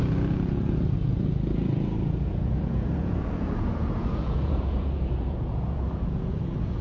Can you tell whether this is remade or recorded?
remade